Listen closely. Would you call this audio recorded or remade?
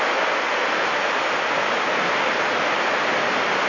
recorded